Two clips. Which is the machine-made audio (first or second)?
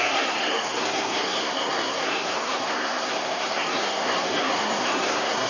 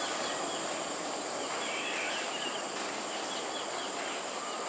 first